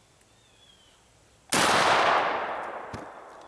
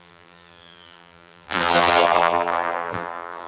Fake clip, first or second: second